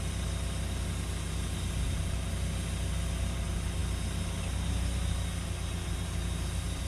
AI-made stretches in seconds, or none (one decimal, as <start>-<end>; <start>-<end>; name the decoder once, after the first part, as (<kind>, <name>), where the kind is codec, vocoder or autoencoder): none